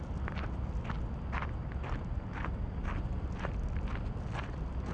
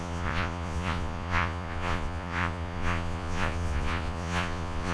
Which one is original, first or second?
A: first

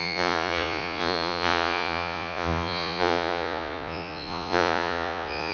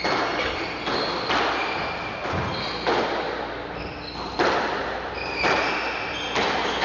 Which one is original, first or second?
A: second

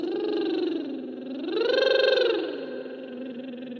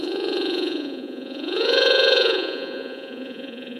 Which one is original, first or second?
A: first